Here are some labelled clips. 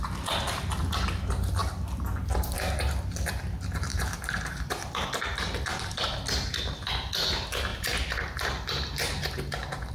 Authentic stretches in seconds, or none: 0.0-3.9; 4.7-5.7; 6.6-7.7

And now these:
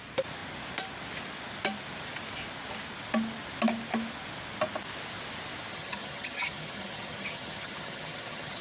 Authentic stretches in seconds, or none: 0.0-5.7

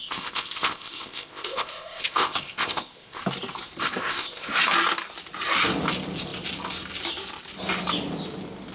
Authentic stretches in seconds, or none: 3.2-4.0; 4.5-8.7

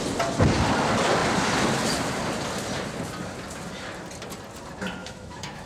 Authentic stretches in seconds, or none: 0.0-5.0

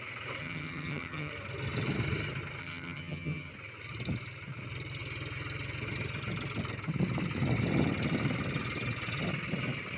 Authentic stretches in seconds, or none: 0.0-0.4; 1.3-2.6; 3.5-10.0

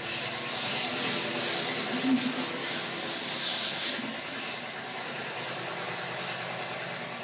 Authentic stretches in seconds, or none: 0.0-7.2